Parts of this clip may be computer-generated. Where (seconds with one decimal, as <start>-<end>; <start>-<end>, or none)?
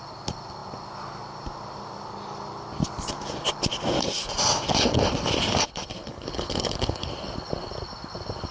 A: 6.0-7.1